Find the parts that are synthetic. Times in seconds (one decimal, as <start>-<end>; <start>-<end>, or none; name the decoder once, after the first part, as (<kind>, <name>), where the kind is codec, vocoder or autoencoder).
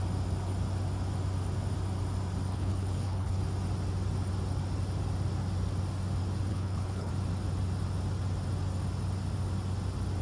2.5-3.4 (codec, HILCodec); 6.5-7.1